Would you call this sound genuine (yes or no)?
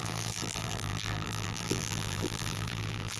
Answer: no